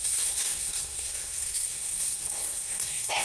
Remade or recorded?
remade